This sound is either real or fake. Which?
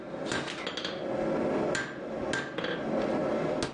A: real